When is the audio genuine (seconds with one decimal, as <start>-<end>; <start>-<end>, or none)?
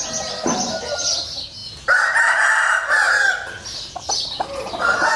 0.0-5.2